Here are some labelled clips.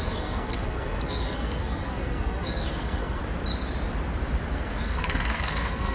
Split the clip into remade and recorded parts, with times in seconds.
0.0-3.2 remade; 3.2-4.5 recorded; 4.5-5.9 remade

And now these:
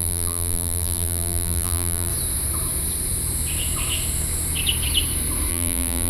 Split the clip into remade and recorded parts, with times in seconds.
0.0-2.1 remade; 2.1-5.5 recorded; 5.5-6.1 remade